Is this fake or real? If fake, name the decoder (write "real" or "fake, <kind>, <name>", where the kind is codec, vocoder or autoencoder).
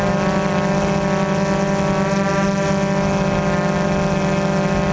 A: real